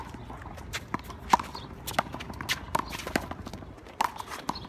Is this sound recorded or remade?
recorded